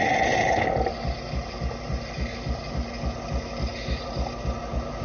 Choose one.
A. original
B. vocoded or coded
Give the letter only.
A